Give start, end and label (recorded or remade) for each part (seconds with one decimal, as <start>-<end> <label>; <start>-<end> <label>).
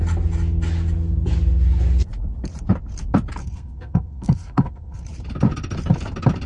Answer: 0.0-3.4 recorded; 3.4-5.0 remade; 5.0-6.5 recorded